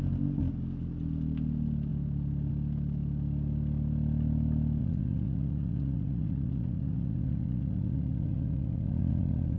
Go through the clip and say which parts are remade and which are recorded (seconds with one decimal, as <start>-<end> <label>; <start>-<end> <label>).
0.0-4.8 recorded; 4.8-9.6 remade